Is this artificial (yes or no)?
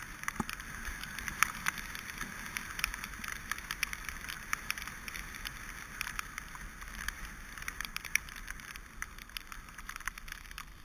yes